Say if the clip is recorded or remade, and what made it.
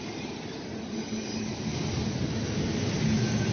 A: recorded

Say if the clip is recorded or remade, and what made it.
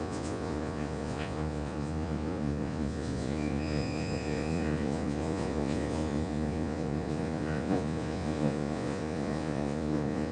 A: remade, vocoder, Vocos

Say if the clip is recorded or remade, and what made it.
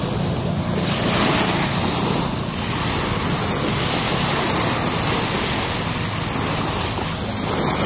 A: recorded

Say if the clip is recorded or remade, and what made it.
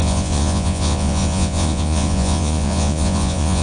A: remade, vocoder, Vocos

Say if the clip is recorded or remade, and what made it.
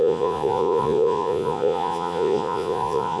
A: remade, vocoder, Vocos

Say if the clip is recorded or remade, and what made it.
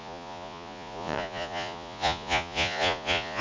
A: remade, vocoder, Vocos